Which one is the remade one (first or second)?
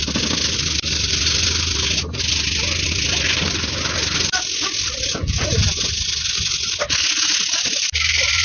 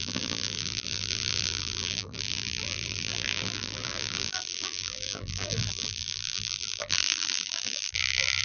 second